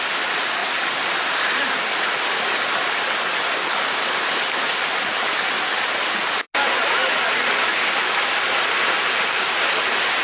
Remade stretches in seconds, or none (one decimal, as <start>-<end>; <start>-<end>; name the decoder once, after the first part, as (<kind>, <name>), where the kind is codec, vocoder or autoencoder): none